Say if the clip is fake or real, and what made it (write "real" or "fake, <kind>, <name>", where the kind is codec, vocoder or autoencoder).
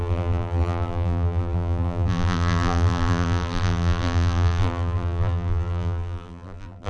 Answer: fake, vocoder, BigVGAN v2